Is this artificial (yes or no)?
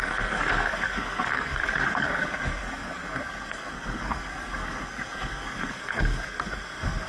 yes